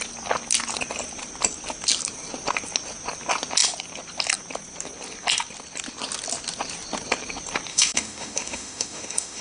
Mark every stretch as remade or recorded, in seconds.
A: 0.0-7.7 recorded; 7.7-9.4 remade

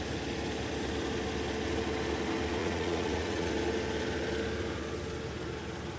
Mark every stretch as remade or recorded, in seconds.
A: 0.0-2.6 recorded; 2.6-3.5 remade; 3.5-6.0 recorded

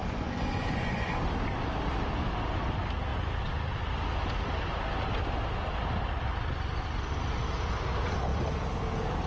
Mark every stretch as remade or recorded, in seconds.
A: 0.0-1.2 remade; 1.2-9.3 recorded

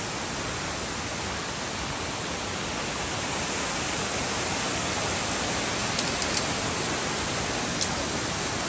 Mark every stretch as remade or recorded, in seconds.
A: 0.0-8.7 recorded

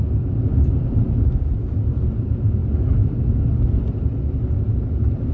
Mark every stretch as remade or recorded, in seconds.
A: 0.0-1.0 remade; 1.0-1.7 recorded; 1.7-5.3 remade

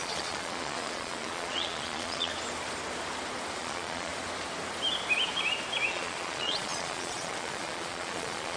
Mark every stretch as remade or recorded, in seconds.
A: 0.0-2.3 remade; 2.3-3.6 recorded; 3.6-4.1 remade; 4.1-5.9 recorded; 5.9-8.6 remade

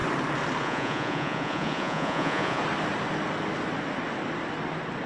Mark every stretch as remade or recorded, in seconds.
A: 0.0-0.6 recorded; 0.6-2.6 remade; 2.6-5.1 recorded